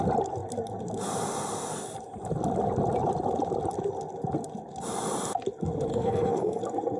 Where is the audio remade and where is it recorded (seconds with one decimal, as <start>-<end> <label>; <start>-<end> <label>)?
0.0-5.9 recorded; 5.9-6.6 remade; 6.6-7.0 recorded